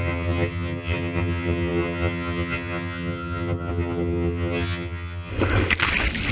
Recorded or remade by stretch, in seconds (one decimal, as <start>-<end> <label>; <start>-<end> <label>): 0.0-5.3 remade; 5.3-6.3 recorded